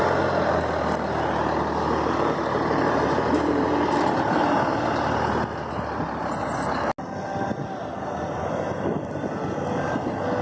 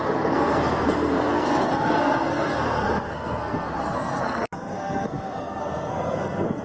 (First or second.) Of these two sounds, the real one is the first